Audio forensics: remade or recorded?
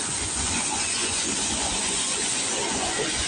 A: remade